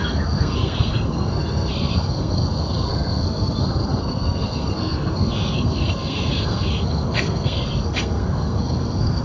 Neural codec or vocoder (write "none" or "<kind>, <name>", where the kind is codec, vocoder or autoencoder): codec, SNAC